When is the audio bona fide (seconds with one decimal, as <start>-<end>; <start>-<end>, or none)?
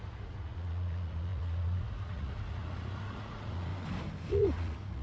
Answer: 3.7-4.3